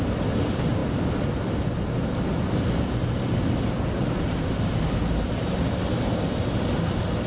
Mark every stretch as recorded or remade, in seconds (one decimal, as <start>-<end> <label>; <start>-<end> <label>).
0.0-7.3 recorded